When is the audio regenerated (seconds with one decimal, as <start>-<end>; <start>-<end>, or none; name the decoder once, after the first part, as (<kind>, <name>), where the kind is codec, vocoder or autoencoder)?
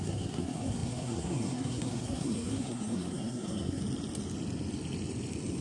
0.0-3.8 (codec, SNAC)